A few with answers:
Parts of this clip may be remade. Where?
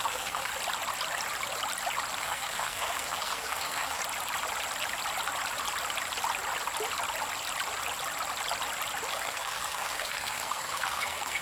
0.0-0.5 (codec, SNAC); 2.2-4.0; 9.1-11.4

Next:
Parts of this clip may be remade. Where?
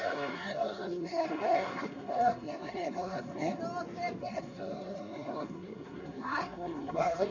0.0-3.6 (codec, SNAC); 4.2-7.3